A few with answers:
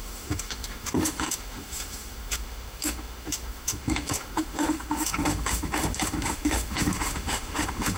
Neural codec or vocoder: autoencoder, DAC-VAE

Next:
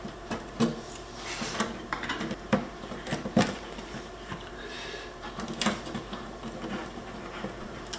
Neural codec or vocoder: vocoder, BigVGAN v2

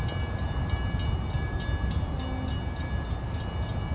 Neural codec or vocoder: none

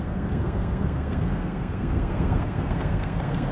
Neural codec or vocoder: codec, SNAC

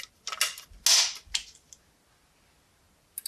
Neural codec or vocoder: none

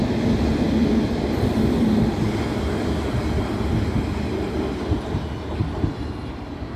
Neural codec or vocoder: none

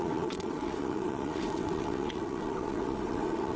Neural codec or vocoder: vocoder, WaveNeXt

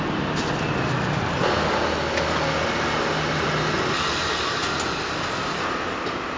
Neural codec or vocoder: none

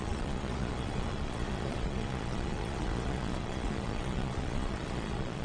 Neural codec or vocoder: vocoder, Vocos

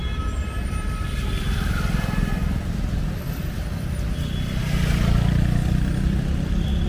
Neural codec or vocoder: none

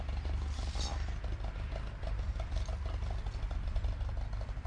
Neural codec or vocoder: none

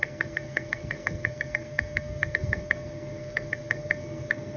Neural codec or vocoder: codec, SNAC